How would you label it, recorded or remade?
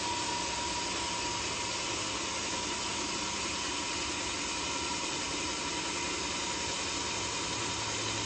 recorded